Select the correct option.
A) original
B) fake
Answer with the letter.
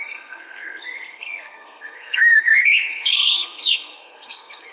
B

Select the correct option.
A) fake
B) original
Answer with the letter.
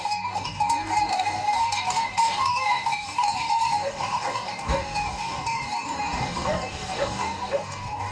A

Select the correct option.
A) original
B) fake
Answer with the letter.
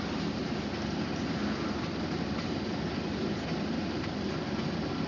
A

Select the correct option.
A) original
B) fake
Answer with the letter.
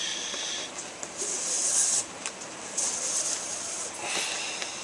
A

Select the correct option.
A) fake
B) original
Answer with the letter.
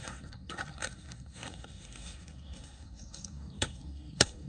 A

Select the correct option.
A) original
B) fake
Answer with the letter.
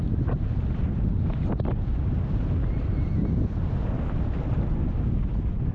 A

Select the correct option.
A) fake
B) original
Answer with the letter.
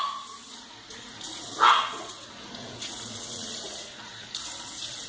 A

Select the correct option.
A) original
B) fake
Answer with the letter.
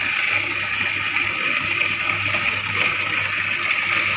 A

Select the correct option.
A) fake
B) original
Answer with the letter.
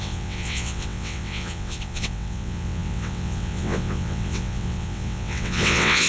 A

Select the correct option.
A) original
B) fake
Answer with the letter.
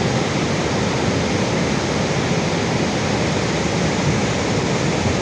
A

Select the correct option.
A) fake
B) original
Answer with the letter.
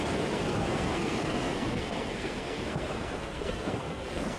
A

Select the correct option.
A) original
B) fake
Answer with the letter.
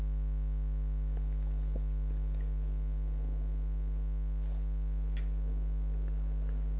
A